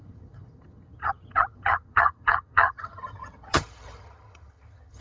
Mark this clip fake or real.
fake